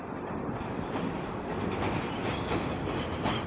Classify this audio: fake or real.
real